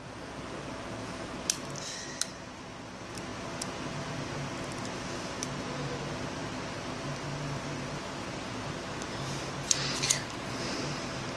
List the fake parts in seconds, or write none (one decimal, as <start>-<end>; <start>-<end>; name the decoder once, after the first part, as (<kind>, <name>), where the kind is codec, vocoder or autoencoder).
none